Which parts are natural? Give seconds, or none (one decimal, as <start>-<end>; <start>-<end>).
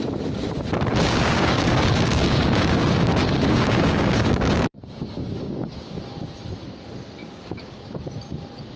0.0-0.9; 6.0-7.2; 7.8-8.8